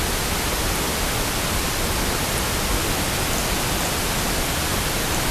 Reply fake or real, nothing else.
real